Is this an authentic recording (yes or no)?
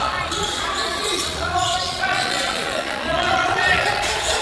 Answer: no